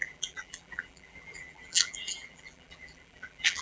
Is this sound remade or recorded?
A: remade